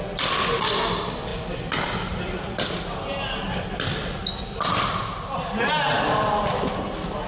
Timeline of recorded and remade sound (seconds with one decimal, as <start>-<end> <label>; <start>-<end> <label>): 0.0-7.3 recorded